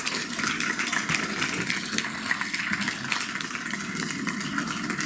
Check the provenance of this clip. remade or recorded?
recorded